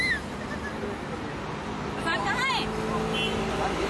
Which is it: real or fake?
real